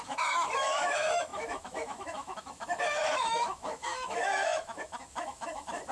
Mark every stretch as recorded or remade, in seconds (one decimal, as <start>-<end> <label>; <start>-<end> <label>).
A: 0.0-5.9 remade